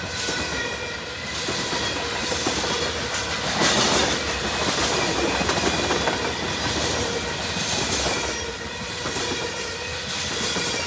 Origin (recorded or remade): recorded